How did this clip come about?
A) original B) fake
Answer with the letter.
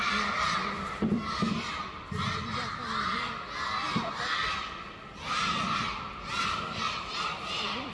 B